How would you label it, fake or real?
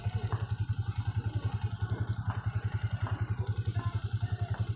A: real